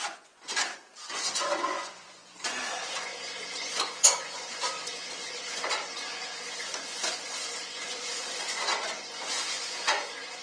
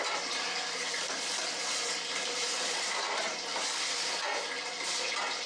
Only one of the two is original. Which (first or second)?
second